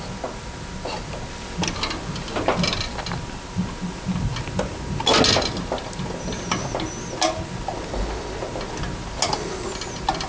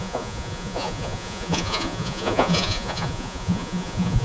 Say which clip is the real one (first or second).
first